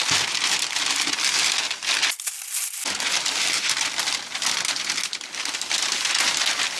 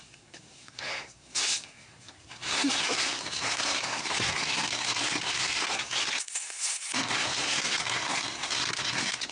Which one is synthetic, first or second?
second